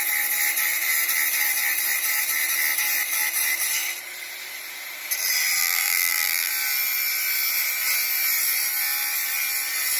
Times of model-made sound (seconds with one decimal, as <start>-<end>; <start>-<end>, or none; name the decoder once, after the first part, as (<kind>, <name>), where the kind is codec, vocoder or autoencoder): 5.6-6.5 (vocoder, BigVGAN v2)